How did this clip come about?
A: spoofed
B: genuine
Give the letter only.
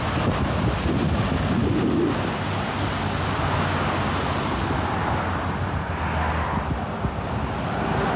B